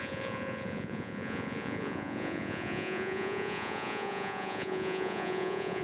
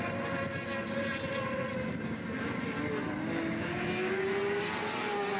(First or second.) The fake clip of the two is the first